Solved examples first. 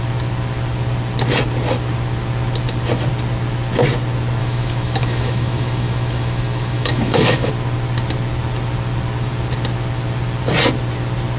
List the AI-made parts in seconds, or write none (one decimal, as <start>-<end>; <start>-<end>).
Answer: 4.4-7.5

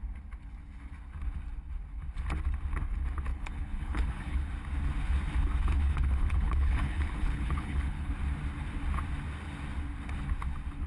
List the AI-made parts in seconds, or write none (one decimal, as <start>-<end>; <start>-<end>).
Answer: 3.3-4.5; 5.8-8.1

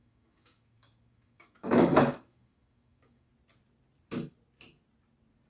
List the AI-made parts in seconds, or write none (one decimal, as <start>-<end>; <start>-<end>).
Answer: 0.0-3.3

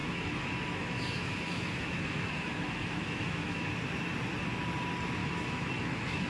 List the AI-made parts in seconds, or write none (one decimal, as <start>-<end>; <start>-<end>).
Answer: 0.0-3.7; 5.2-6.3

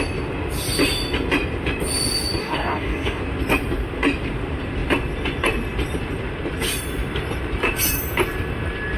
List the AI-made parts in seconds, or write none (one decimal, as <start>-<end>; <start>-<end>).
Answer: 2.4-3.2